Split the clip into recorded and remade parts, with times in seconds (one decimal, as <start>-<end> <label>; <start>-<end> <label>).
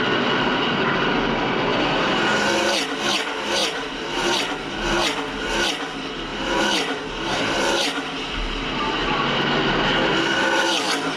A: 0.0-1.7 recorded; 1.7-2.2 remade; 2.2-3.6 recorded; 3.6-4.8 remade; 4.8-6.3 recorded; 6.3-10.3 remade; 10.3-11.2 recorded